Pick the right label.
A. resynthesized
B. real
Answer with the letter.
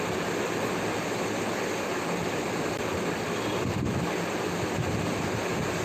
B